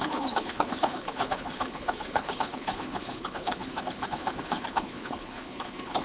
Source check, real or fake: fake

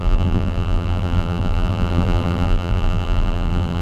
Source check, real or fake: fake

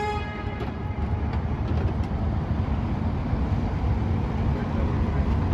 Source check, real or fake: fake